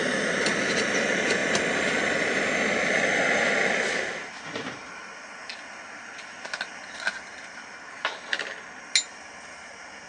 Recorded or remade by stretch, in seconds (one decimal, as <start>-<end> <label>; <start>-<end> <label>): 0.0-7.3 recorded; 7.3-8.0 remade; 8.0-10.1 recorded